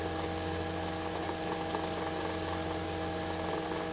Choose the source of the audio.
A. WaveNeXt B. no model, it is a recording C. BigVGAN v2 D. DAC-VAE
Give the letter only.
B